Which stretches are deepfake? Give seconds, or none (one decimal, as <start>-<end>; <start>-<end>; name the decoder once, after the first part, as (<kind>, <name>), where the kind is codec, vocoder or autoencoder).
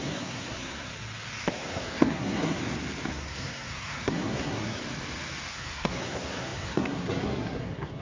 0.0-0.9 (codec, SNAC); 1.5-2.6; 3.1-4.8; 5.5-8.0